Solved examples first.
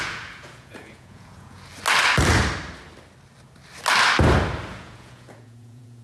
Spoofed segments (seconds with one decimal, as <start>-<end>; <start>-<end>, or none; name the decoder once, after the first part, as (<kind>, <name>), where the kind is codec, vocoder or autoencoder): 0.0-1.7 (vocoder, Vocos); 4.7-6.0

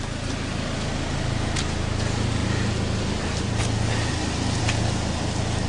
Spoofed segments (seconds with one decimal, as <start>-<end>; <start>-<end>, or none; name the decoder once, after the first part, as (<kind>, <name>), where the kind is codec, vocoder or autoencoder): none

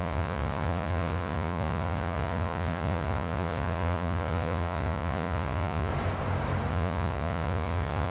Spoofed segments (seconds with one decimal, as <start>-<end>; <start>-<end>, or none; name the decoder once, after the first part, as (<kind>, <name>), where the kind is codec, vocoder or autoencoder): 0.0-5.9 (vocoder, Vocos); 6.7-8.1